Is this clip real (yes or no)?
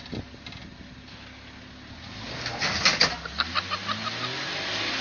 yes